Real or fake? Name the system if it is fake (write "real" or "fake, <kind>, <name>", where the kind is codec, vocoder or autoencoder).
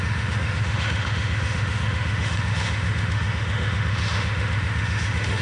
fake, autoencoder, DAC-VAE